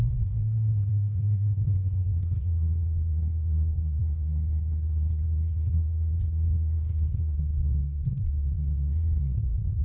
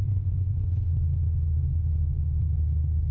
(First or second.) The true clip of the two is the second